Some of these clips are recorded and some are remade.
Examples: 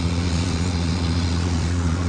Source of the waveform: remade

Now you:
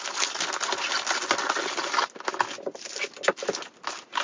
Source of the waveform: recorded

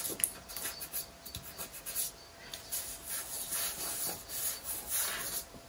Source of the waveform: recorded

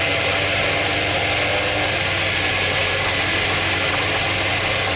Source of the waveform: recorded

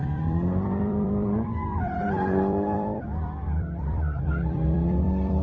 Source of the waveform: remade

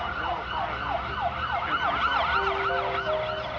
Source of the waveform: recorded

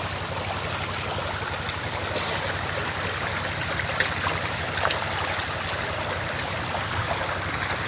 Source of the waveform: recorded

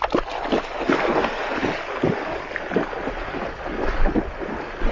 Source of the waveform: recorded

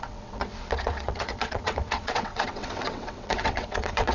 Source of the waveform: remade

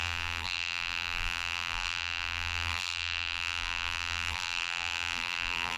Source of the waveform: remade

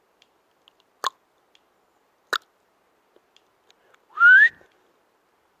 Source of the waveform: recorded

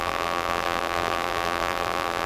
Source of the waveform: remade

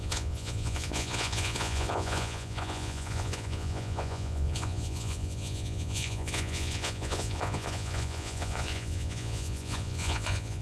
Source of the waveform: remade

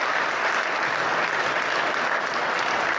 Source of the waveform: recorded